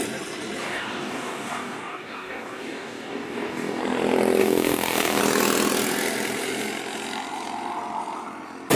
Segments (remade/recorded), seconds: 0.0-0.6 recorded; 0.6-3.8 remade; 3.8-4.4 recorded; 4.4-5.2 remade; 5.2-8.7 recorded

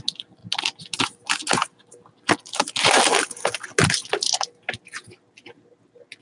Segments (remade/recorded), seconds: 0.0-6.2 recorded

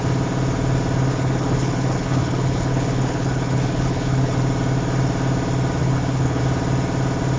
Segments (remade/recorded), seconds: 0.0-1.1 recorded; 1.1-4.4 remade; 4.4-5.8 recorded; 5.8-6.4 remade; 6.4-7.4 recorded